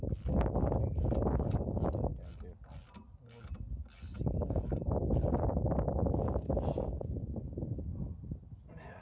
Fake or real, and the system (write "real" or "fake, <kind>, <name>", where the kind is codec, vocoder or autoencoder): real